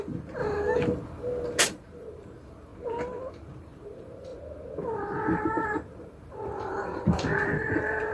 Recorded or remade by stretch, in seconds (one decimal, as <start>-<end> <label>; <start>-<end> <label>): 0.0-0.4 remade; 0.4-1.6 recorded; 1.6-2.7 remade; 2.7-3.3 recorded; 3.3-4.3 remade; 4.3-4.8 recorded; 4.8-8.1 remade